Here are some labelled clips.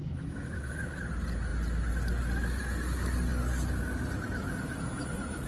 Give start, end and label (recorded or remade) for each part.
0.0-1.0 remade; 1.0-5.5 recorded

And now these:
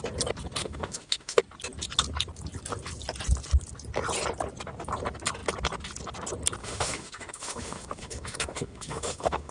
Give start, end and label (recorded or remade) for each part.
0.0-0.6 recorded; 0.6-1.4 remade; 1.4-6.6 recorded; 6.6-9.5 remade

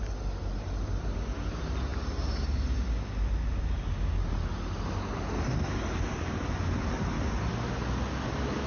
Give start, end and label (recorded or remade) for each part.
0.0-8.7 recorded

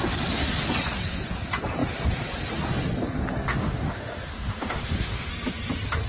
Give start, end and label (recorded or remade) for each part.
0.0-3.5 recorded; 3.5-5.3 remade; 5.3-6.1 recorded

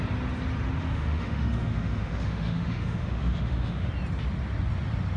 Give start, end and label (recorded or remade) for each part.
0.0-0.8 recorded; 0.8-3.9 remade; 3.9-5.2 recorded

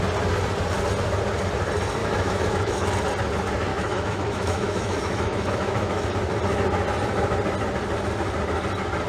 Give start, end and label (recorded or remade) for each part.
0.0-2.0 recorded; 2.0-2.9 remade; 2.9-3.7 recorded; 3.7-6.1 remade; 6.1-9.1 recorded